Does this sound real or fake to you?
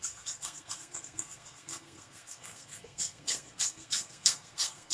fake